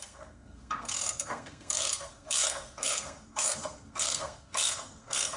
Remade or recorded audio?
remade